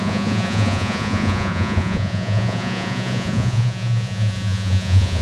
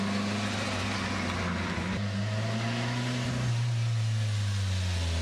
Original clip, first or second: second